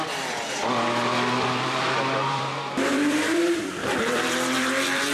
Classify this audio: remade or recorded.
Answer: remade